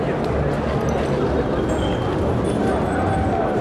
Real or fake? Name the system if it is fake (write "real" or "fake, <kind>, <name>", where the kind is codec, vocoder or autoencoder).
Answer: real